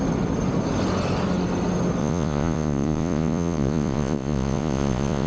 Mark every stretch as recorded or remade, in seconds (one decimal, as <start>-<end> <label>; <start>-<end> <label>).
0.0-2.0 recorded; 2.0-5.3 remade